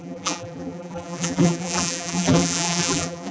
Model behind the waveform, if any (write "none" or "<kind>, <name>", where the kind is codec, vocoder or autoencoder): vocoder, BigVGAN v2